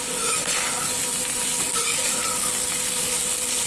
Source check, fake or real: real